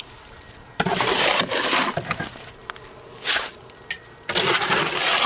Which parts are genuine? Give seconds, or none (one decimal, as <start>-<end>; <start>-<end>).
2.0-5.3

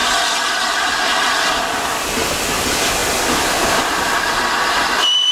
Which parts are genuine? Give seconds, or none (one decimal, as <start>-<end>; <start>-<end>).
0.0-0.6

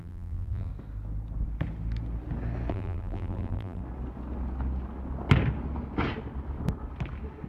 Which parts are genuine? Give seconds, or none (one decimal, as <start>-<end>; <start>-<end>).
0.7-2.7; 3.8-7.5